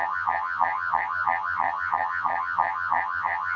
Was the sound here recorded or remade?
remade